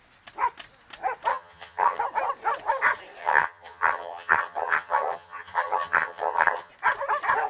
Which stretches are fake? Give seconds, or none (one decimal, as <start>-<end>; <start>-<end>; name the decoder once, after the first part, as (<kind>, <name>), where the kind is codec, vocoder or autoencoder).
1.3-2.0 (vocoder, HiFi-GAN); 3.2-6.7